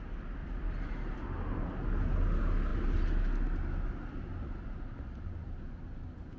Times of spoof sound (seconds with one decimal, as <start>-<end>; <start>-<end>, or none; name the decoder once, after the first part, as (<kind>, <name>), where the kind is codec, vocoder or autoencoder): 0.4-1.1 (vocoder, BigVGAN v2)